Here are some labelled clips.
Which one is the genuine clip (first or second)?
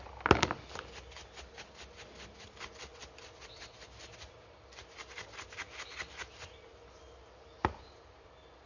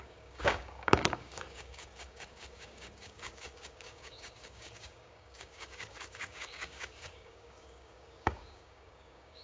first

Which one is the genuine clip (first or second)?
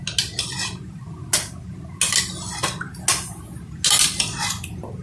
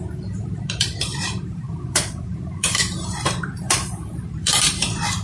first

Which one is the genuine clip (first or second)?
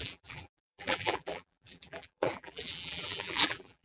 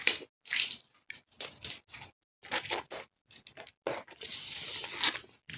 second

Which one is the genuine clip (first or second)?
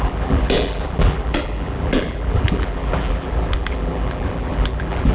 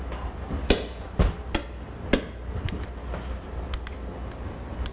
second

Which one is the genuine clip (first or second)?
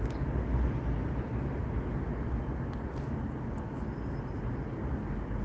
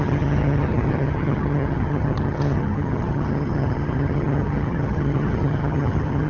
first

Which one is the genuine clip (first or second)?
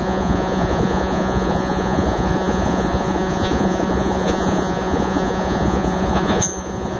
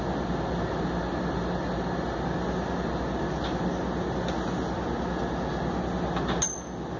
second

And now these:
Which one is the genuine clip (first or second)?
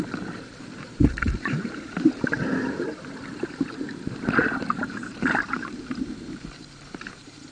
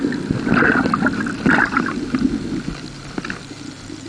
second